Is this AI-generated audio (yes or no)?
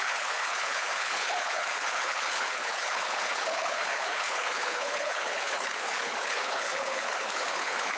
yes